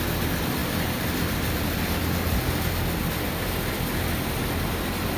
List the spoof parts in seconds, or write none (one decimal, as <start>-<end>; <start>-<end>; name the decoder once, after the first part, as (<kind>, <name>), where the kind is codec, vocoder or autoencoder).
none